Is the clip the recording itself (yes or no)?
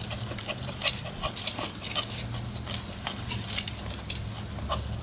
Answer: yes